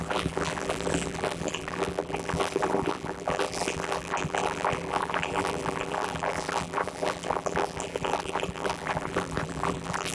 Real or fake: fake